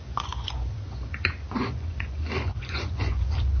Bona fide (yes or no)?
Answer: no